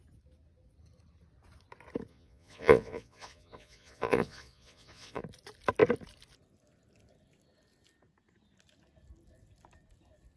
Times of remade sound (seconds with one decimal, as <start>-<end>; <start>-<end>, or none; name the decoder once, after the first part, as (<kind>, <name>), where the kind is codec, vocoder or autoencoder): 2.1-5.2 (vocoder, Vocos)